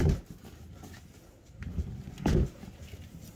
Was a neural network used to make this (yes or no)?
no